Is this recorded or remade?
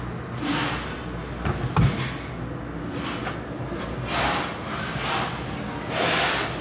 recorded